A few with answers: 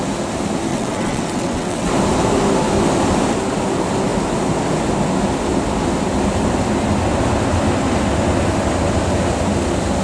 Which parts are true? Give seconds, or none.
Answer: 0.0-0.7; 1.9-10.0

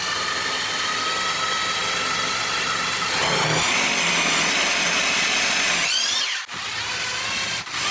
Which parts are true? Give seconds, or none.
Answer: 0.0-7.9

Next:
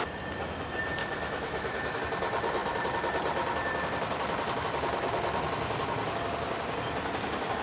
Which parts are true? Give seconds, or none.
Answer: 0.0-1.0; 2.0-7.6